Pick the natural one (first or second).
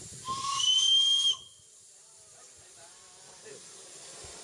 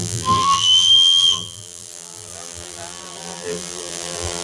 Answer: first